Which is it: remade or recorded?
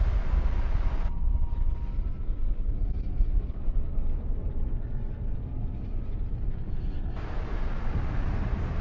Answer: recorded